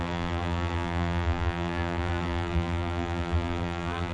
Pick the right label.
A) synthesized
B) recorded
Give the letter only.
A